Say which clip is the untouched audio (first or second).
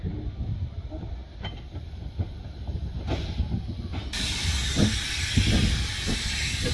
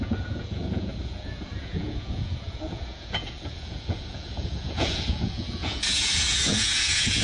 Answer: first